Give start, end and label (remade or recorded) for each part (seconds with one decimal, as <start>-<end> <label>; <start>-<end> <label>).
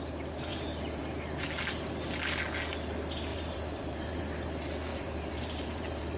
0.0-0.5 recorded; 0.5-1.0 remade; 1.0-3.3 recorded; 3.3-4.2 remade; 4.2-4.9 recorded; 4.9-6.2 remade